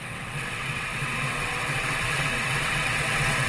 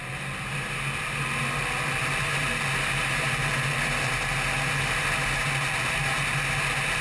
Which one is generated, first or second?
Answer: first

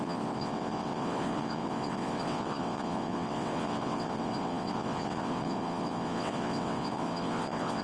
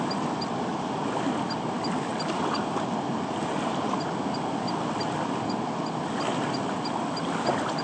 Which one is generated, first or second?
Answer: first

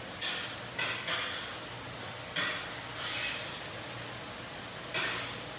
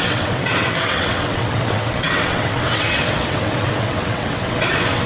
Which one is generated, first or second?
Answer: second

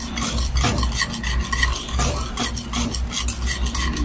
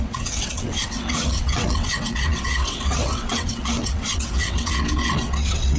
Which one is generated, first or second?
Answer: second